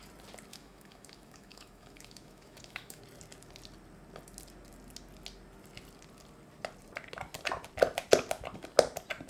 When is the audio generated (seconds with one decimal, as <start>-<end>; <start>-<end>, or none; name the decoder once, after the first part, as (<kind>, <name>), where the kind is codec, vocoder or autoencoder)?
0.5-3.0 (autoencoder, DAC-VAE)